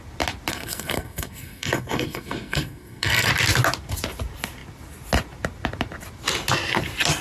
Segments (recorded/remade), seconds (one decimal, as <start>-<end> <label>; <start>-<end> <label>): 0.0-0.5 recorded; 0.5-3.3 remade; 3.3-7.2 recorded